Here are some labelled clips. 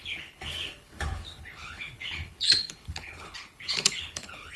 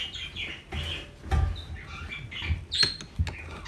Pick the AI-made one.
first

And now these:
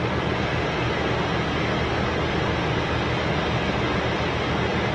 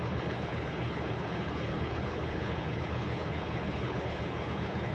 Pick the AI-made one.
second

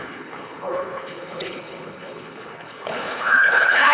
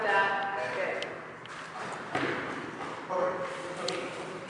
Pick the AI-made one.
first